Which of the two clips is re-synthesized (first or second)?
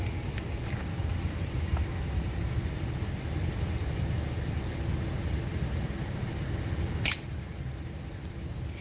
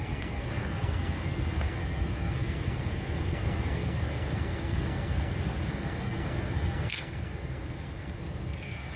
second